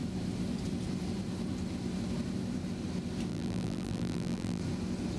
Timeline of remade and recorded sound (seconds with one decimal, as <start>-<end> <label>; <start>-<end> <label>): 0.0-3.3 recorded; 3.3-4.6 remade; 4.6-5.2 recorded